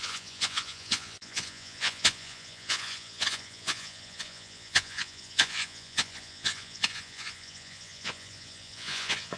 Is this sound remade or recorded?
remade